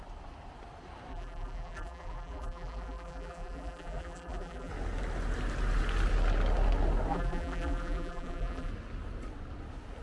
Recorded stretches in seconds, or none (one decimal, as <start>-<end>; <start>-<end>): 0.0-1.1; 4.7-7.1; 8.7-10.0